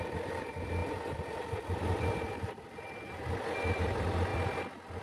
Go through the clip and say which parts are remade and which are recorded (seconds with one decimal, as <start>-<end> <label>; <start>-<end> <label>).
0.0-4.3 remade; 4.3-5.0 recorded